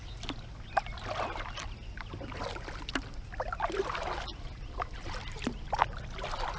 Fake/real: real